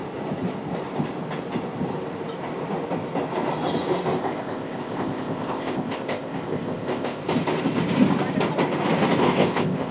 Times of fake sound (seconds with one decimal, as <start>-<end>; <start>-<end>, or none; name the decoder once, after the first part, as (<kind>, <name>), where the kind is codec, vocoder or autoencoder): 4.2-7.2 (codec, ZipCodec); 9.2-9.9